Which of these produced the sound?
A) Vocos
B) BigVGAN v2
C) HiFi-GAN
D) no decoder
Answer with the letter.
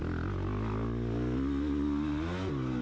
D